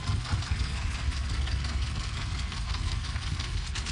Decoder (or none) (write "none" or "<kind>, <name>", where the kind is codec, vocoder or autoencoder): codec, SNAC